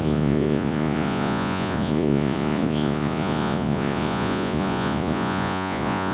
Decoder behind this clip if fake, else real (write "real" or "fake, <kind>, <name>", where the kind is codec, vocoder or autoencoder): fake, vocoder, Vocos